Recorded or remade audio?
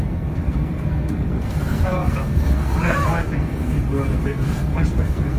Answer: remade